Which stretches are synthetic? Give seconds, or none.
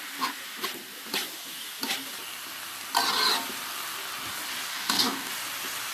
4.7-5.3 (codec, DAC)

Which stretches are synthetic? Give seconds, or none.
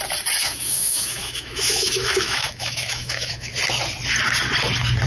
0.4-3.5 (autoencoder, DAC-VAE)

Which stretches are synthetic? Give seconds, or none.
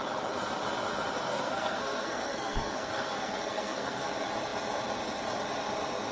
1.3-4.1 (codec, SNAC)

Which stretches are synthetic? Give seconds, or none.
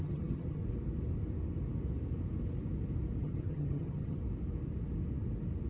0.0-0.6 (vocoder, HiFi-GAN); 3.2-4.2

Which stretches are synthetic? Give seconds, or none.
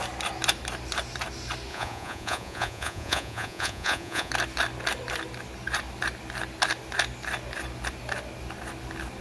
1.7-4.3 (vocoder, Vocos)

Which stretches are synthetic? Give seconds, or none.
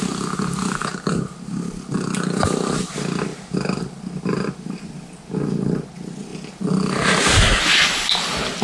none